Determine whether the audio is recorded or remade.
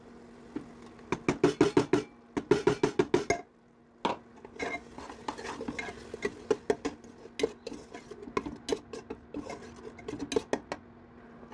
recorded